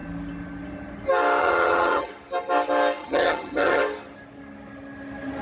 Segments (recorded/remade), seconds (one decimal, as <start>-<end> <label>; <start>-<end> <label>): 0.0-1.4 recorded; 1.4-2.1 remade; 2.1-3.0 recorded; 3.0-3.8 remade; 3.8-5.4 recorded